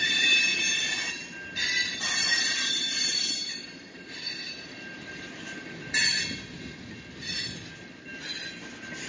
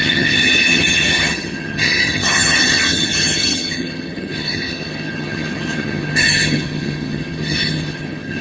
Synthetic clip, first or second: second